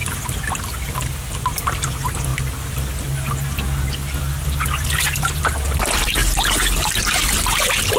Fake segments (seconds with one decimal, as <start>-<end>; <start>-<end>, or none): 1.1-2.3; 5.4-6.2; 7.3-8.0